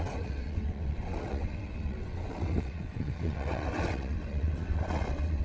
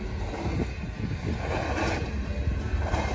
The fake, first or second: first